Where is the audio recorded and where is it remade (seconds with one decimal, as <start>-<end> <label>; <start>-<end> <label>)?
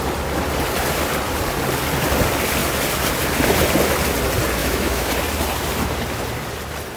0.0-4.6 recorded; 4.6-5.1 remade; 5.1-7.0 recorded